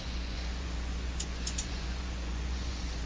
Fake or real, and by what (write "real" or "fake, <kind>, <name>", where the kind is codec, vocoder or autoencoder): fake, vocoder, Vocos